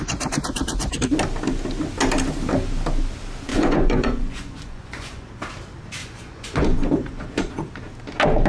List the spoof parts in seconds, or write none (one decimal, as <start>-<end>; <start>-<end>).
3.5-5.3; 6.0-7.5